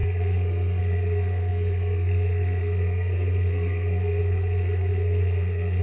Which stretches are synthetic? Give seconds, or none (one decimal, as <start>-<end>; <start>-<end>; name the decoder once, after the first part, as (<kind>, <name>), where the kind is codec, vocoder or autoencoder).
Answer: 0.0-5.8 (codec, SNAC)